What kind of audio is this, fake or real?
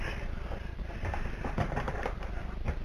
fake